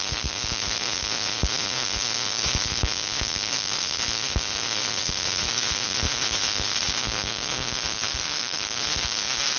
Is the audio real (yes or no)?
no